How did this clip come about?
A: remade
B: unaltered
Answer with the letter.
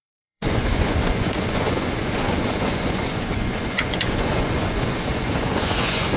A